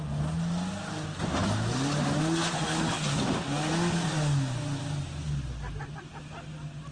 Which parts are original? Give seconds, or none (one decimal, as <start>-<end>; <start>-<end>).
0.0-6.9